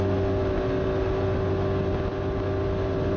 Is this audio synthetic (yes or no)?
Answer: no